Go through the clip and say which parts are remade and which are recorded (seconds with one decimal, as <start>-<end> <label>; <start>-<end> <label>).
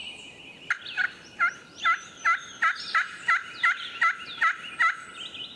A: 0.0-5.6 recorded